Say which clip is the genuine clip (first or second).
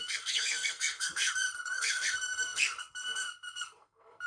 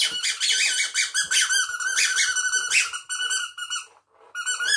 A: second